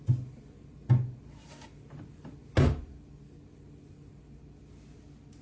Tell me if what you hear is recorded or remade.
recorded